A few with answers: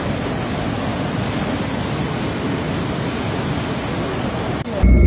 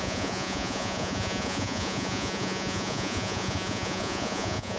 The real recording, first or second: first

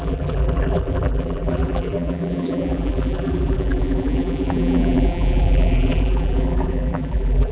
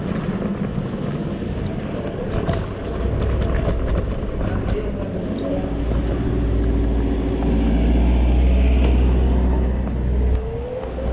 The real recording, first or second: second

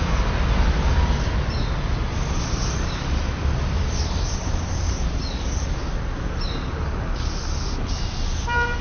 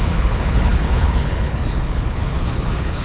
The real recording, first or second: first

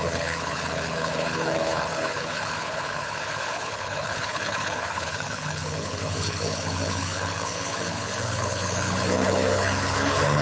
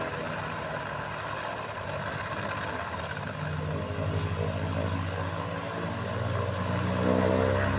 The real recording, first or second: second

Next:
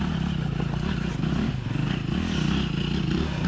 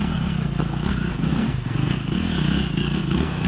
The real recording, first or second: first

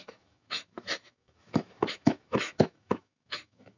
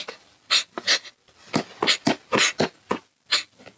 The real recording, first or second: second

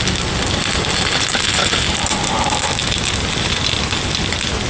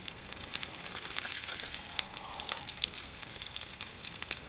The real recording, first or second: first